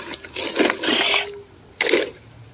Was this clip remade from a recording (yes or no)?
no